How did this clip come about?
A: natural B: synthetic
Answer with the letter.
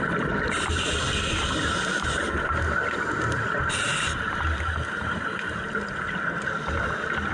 A